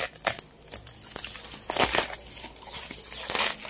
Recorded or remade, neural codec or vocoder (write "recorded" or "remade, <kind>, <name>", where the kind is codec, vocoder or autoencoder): recorded